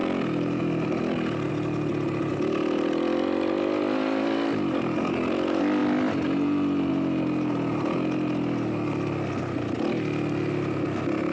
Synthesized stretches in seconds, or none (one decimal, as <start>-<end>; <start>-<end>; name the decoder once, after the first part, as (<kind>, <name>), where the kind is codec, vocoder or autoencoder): none